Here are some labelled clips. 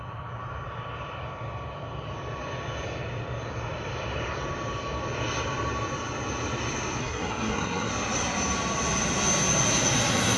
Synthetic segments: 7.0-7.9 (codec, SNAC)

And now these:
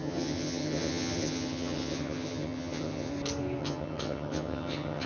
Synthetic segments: 0.0-3.1 (vocoder, HiFi-GAN); 3.6-5.1

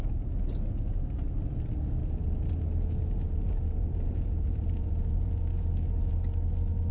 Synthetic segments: 2.0-6.1 (vocoder, Vocos)

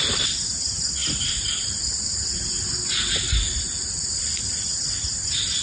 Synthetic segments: none